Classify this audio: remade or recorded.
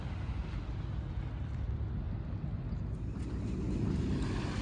recorded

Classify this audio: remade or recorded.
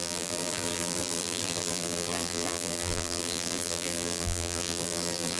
remade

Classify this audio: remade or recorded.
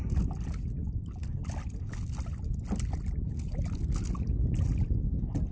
recorded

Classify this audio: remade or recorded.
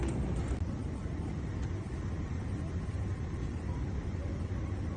recorded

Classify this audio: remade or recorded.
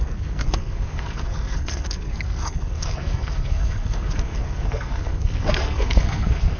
remade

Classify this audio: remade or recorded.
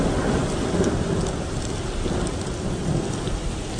recorded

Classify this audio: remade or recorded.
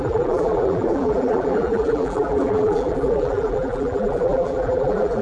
remade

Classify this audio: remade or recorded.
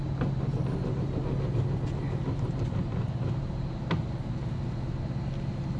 recorded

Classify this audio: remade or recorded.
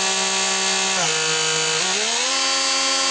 recorded